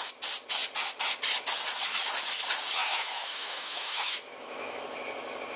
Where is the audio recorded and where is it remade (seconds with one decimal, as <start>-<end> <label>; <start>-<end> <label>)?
0.0-2.8 recorded; 2.8-4.8 remade; 4.8-5.6 recorded